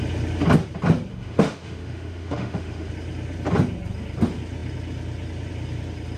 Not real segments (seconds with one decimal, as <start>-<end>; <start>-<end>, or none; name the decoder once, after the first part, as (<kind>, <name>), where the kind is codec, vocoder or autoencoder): 1.1-2.9 (autoencoder, DAC-VAE)